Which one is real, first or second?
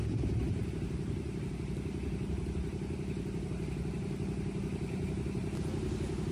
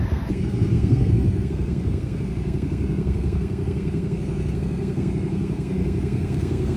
first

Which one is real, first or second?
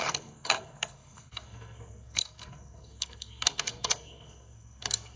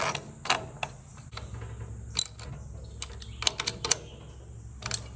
second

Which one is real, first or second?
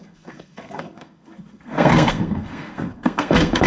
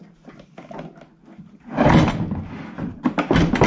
second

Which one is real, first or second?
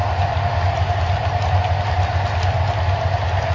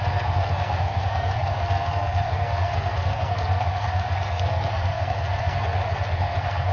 first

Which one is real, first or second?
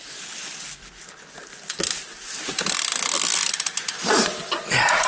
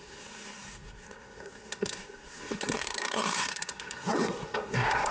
first